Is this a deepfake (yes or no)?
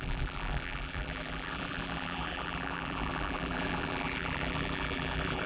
yes